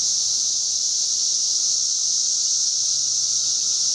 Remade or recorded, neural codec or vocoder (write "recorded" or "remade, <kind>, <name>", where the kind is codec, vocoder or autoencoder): recorded